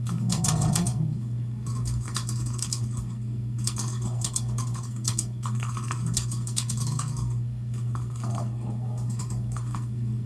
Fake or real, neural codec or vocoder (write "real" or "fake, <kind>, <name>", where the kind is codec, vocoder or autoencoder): fake, codec, SNAC